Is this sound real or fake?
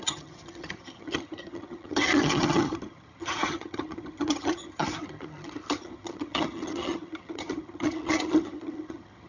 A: fake